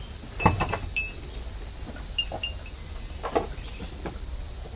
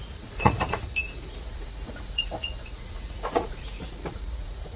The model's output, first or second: second